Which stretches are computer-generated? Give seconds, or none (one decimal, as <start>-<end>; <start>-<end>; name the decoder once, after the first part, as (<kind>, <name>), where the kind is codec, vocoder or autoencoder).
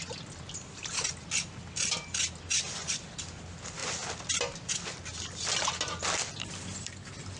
none